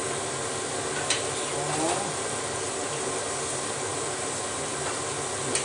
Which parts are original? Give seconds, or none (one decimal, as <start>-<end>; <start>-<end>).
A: 0.0-5.6